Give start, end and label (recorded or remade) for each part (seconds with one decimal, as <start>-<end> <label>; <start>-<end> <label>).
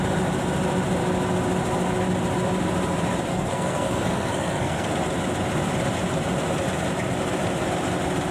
0.0-3.3 recorded; 3.3-4.9 remade; 4.9-8.3 recorded